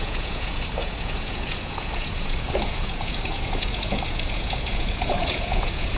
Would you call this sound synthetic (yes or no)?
yes